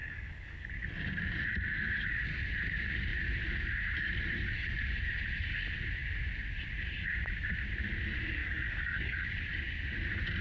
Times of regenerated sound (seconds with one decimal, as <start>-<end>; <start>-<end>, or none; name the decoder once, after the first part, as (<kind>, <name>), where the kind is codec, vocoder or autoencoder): 0.0-0.7 (codec, DAC); 8.4-9.3